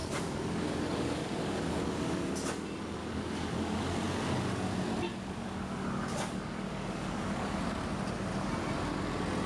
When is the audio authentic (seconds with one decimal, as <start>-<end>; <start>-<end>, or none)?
2.2-3.0; 3.8-5.1; 7.6-9.5